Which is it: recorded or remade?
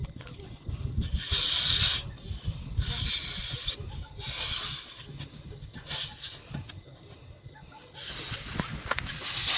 recorded